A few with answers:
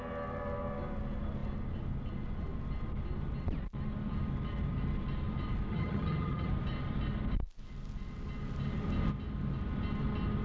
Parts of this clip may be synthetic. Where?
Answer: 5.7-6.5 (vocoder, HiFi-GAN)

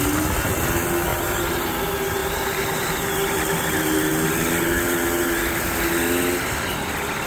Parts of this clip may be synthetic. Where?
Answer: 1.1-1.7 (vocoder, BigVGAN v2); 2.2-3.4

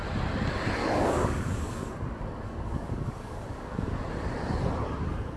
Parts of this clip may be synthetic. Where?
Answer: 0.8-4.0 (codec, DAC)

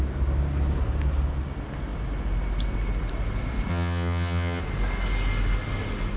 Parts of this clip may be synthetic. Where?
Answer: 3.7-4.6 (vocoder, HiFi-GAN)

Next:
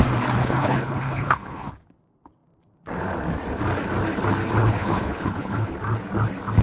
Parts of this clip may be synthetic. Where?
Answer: 0.4-1.7 (codec, HILCodec); 4.6-5.7

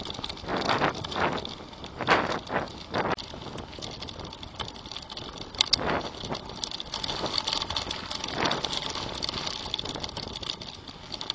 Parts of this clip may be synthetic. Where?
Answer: none

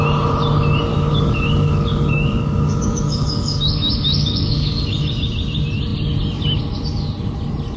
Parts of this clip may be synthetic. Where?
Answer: 0.9-4.8 (codec, DAC)

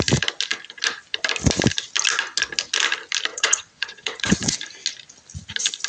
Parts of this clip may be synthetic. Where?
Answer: 3.3-4.5 (vocoder, WaveNeXt)